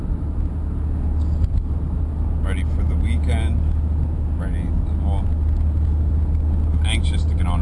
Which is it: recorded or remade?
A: recorded